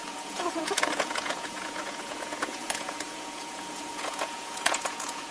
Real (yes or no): no